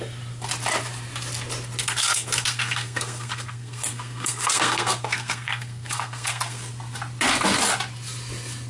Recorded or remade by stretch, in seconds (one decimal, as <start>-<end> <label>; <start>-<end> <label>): 0.0-1.8 recorded; 1.8-6.7 remade; 6.7-8.7 recorded